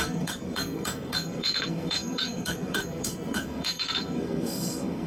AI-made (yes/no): yes